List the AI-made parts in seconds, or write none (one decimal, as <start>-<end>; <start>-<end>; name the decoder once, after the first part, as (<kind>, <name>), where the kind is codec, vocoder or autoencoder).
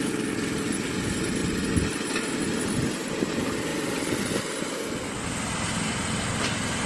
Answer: none